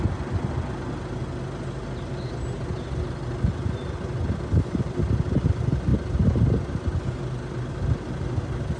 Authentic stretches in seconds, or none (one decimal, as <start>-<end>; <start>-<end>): 0.0-8.8